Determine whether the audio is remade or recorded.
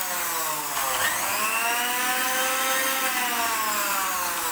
recorded